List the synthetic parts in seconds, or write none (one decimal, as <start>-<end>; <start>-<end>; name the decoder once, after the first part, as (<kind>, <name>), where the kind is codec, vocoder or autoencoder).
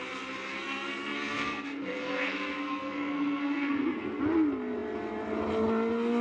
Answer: 0.5-4.2 (codec, SNAC)